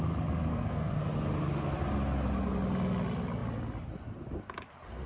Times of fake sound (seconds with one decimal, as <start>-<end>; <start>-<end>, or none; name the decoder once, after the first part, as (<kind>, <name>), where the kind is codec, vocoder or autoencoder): 0.5-1.0 (codec, SNAC)